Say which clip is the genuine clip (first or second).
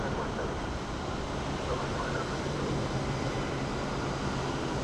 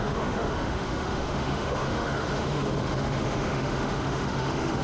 first